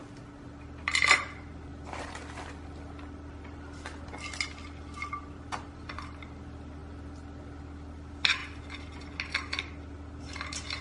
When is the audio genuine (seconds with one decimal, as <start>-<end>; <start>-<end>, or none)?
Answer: 8.4-10.2